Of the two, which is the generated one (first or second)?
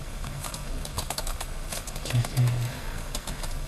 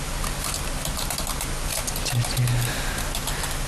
first